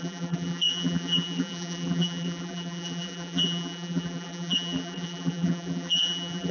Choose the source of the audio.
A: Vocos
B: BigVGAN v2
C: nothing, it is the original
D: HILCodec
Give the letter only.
B